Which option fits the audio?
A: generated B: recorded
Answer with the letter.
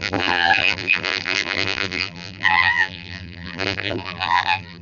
A